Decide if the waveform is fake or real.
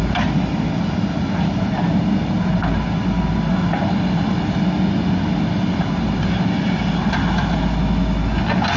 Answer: real